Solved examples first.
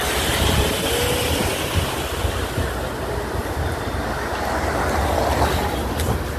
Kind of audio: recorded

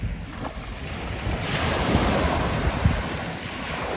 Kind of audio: recorded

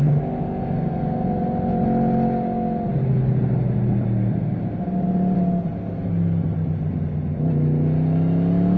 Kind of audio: recorded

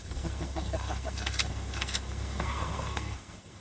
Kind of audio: remade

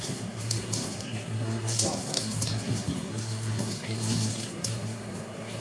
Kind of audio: remade